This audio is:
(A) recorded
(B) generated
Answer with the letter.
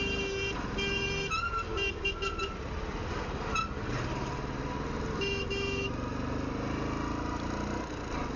A